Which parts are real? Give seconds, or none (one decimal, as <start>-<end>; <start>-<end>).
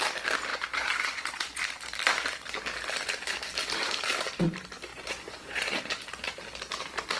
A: 0.0-0.5; 1.6-4.9; 5.8-7.2